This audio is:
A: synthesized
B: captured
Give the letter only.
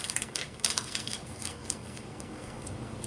A